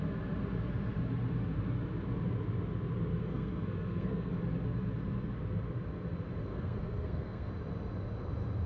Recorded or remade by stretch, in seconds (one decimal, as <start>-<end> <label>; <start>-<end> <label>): 0.0-3.1 recorded; 3.1-4.3 remade; 4.3-6.5 recorded; 6.5-7.5 remade; 7.5-8.7 recorded